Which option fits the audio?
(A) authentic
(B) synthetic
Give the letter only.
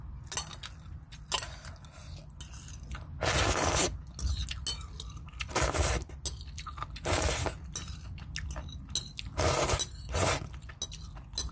A